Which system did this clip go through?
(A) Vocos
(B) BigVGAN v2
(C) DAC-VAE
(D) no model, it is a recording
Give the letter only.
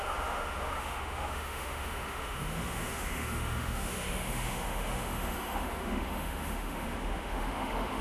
C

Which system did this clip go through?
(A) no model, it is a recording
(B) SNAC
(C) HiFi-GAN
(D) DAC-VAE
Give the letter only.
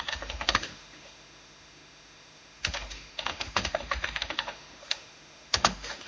D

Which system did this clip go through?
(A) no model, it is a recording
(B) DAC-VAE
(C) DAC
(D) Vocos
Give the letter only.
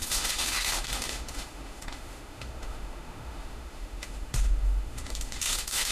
B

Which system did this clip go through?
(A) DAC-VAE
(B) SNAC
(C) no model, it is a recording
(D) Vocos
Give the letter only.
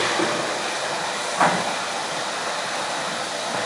C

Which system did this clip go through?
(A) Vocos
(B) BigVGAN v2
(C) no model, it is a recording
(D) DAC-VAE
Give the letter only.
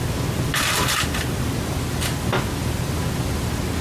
C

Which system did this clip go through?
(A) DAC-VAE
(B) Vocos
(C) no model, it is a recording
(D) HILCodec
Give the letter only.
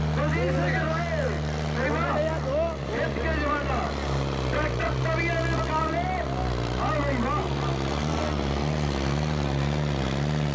C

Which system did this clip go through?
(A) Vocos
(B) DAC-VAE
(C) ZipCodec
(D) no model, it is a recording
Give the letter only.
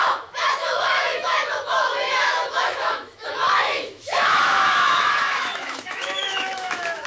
B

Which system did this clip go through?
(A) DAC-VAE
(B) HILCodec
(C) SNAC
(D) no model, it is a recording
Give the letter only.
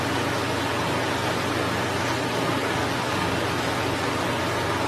D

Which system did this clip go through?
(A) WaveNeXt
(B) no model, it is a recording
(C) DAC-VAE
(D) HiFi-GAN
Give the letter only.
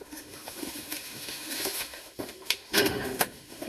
C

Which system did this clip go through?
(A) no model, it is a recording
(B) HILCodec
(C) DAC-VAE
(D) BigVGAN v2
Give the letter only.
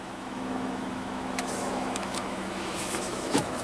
C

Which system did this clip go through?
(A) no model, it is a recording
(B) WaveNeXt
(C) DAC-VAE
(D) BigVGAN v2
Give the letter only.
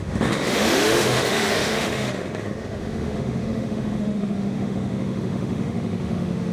C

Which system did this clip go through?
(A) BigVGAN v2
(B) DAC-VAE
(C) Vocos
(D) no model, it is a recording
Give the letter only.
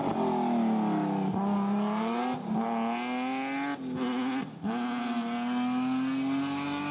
D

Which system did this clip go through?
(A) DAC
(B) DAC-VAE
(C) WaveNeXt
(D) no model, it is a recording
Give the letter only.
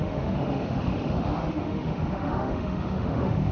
B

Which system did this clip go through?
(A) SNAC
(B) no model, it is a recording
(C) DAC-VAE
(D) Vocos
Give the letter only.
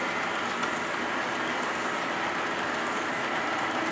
B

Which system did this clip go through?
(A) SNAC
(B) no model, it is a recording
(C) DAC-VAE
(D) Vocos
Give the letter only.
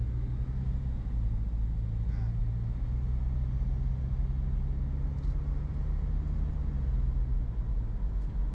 B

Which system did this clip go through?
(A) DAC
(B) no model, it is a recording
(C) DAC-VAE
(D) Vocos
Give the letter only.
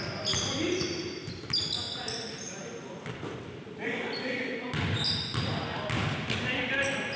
B